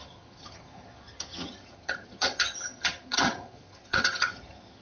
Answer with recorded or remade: remade